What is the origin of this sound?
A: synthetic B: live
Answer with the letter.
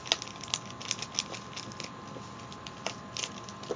B